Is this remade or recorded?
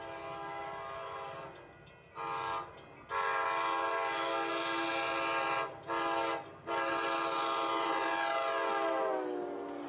recorded